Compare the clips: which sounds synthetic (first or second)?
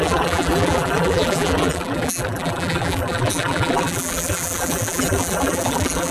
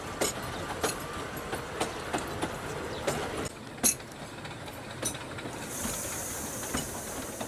first